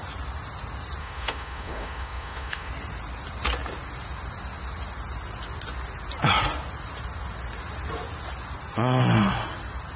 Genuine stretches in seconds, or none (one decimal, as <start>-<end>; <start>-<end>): 0.0-1.0; 2.7-10.0